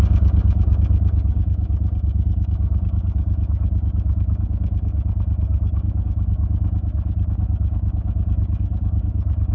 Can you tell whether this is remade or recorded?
remade